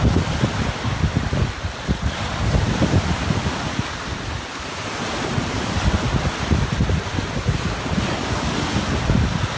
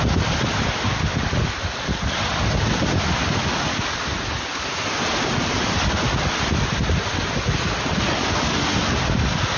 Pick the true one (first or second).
second